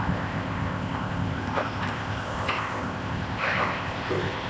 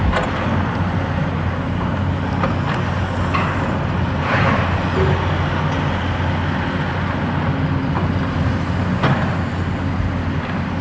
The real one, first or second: second